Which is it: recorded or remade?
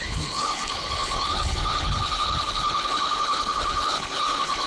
remade